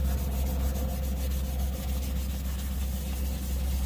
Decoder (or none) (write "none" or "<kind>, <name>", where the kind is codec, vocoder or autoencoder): none